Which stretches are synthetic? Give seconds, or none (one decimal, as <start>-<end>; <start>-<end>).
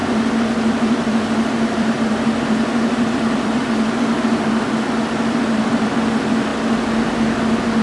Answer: 0.0-6.5